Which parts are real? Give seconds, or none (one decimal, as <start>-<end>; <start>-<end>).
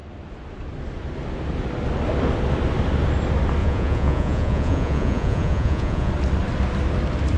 0.0-3.6; 6.1-7.4